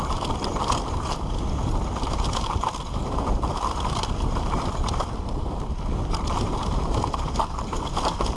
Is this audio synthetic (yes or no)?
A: yes